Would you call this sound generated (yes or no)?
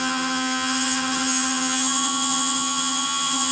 yes